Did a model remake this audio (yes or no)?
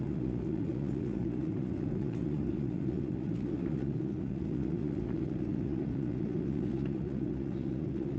yes